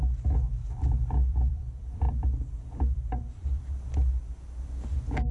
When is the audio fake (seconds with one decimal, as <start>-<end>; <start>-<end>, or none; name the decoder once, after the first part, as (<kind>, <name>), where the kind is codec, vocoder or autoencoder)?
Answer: 0.6-3.6 (vocoder, BigVGAN v2)